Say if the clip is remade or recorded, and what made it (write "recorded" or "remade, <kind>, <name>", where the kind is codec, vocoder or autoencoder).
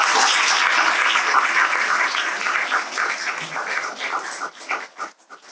recorded